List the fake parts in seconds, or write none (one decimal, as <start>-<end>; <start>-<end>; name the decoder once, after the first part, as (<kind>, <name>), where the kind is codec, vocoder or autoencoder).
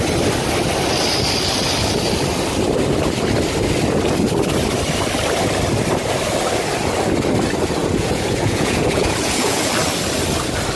7.8-9.7 (vocoder, Vocos)